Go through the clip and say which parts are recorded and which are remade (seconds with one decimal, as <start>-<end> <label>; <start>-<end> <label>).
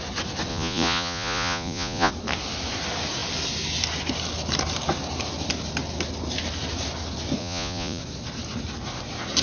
0.0-0.5 recorded; 0.5-2.1 remade; 2.1-7.4 recorded; 7.4-8.0 remade; 8.0-9.4 recorded